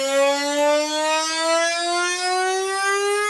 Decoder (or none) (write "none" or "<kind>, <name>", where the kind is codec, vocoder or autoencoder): none